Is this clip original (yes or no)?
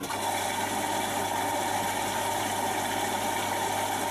yes